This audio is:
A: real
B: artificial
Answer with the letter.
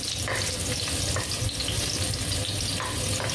A